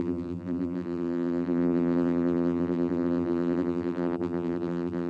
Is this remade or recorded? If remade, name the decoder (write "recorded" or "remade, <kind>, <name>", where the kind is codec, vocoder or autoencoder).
remade, vocoder, BigVGAN v2